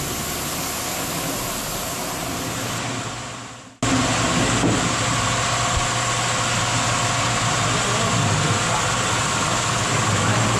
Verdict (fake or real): real